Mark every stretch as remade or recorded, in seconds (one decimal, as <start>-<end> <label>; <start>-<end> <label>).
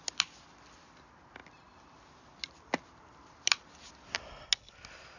0.0-5.2 recorded